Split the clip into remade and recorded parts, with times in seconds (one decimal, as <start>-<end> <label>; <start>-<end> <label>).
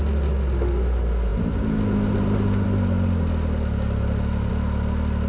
0.0-5.3 recorded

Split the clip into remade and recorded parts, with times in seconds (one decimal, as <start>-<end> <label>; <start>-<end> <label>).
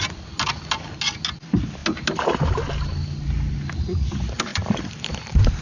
0.0-4.5 recorded; 4.5-5.6 remade